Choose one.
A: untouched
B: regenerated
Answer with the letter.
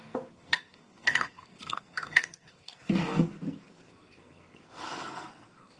B